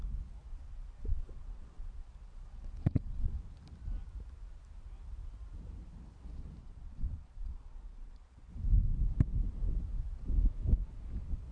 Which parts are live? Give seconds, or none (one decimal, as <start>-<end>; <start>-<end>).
0.0-0.5; 3.4-6.6; 8.5-11.5